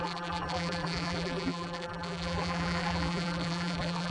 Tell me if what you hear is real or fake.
fake